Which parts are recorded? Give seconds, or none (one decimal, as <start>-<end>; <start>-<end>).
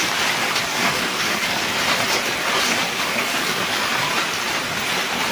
0.0-0.7; 1.7-2.7; 3.9-5.3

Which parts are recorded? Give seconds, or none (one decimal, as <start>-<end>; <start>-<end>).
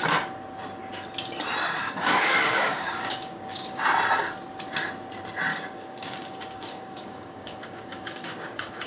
0.0-1.8; 3.8-5.5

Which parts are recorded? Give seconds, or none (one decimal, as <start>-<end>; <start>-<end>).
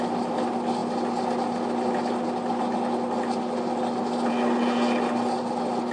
0.0-5.9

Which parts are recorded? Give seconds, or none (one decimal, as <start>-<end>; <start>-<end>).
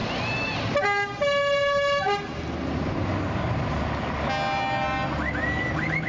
0.0-6.1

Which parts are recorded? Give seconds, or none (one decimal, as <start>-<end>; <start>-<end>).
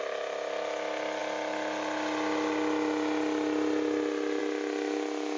0.0-5.4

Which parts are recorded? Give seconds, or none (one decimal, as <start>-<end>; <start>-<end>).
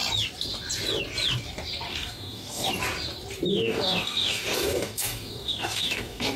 0.0-1.9; 2.7-3.5